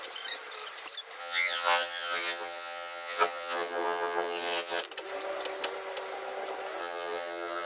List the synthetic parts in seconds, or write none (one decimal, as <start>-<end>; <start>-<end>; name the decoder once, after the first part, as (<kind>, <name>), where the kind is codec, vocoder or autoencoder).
1.2-4.8 (vocoder, HiFi-GAN); 6.8-7.7